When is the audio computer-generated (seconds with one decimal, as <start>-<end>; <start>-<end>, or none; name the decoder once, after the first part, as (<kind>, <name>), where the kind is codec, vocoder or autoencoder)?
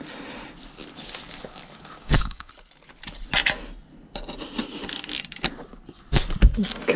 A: 2.0-2.5 (codec, DAC)